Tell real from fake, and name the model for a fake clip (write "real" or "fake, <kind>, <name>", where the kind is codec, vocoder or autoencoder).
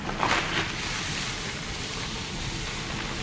real